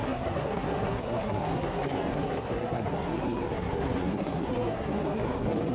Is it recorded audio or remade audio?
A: remade